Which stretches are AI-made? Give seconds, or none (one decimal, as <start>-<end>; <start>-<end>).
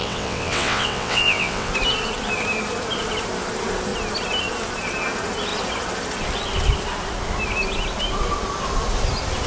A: 0.0-1.7